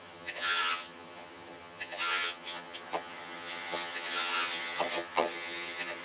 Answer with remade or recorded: remade